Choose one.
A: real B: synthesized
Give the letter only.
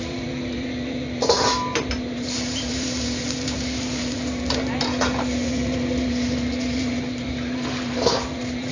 B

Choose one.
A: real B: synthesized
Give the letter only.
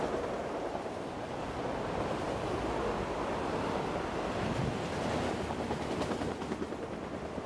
A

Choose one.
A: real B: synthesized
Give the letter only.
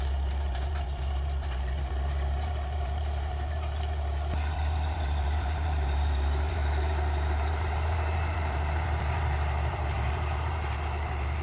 B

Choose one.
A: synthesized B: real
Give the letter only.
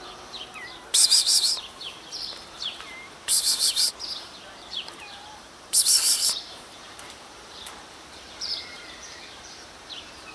A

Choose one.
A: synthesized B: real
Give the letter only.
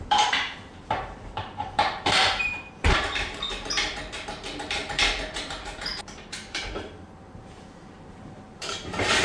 A